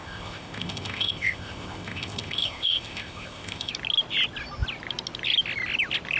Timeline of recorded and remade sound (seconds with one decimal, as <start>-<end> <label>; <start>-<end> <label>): 0.0-3.7 remade; 3.7-6.2 recorded